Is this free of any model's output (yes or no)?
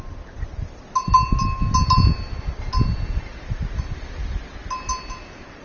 yes